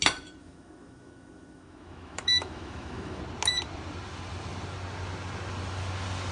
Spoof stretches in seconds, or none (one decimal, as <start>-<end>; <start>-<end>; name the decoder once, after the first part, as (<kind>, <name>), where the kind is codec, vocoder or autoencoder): 0.4-3.2 (autoencoder, DAC-VAE)